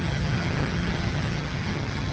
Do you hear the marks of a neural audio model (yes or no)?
yes